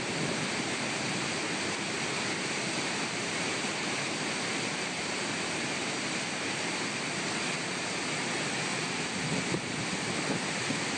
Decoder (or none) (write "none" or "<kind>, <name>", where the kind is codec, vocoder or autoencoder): none